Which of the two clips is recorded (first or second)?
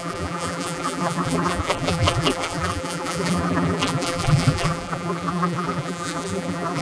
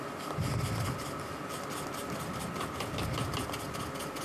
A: second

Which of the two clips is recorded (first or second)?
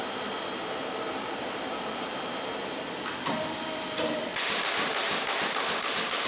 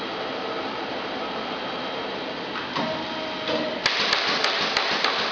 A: second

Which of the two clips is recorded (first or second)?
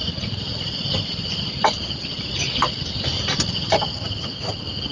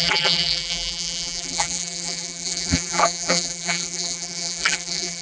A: first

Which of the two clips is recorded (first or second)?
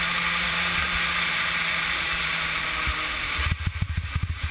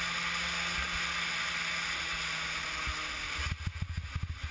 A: second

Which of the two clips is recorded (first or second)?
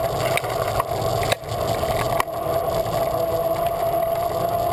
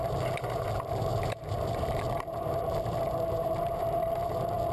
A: first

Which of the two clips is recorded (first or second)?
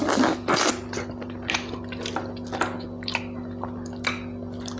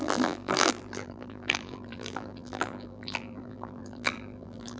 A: first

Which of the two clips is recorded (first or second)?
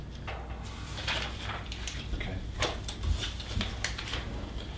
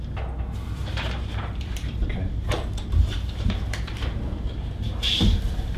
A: first